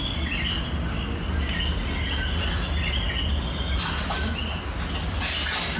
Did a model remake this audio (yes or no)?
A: no